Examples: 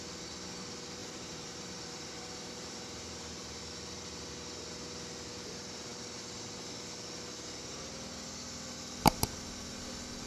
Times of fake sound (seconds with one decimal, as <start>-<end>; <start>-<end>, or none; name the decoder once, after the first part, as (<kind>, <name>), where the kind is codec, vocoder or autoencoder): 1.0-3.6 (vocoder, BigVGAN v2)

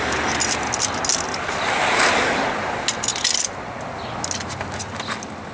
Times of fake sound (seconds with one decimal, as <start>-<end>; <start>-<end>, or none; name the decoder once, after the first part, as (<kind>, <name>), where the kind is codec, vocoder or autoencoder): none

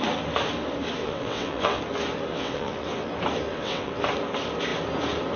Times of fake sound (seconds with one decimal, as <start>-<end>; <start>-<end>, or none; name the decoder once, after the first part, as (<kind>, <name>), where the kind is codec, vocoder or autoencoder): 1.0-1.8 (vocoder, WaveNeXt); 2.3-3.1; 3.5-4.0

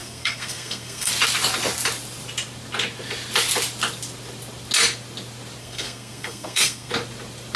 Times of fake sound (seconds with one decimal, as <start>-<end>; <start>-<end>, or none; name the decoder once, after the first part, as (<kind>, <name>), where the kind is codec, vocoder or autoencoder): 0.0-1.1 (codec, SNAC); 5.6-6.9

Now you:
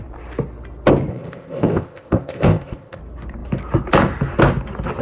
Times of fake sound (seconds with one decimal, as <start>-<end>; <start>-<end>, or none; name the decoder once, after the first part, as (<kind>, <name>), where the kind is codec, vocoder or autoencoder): 1.1-3.0 (codec, ZipCodec)

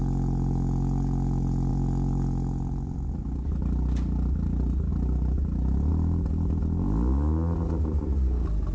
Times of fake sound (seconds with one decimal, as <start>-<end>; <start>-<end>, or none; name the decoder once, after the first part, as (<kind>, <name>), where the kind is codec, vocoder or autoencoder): 1.7-3.6 (vocoder, BigVGAN v2)

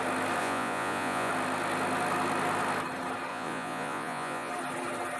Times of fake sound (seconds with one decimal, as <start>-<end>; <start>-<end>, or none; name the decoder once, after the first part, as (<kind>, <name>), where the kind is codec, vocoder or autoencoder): 0.4-1.3 (vocoder, Vocos); 3.3-4.5

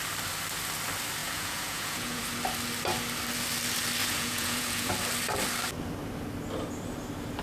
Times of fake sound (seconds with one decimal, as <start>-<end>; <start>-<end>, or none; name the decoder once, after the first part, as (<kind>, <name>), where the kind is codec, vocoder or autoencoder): 1.2-2.2 (vocoder, Vocos); 4.0-4.9